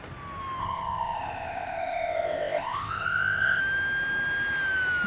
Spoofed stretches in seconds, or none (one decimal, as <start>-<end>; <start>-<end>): 0.6-3.6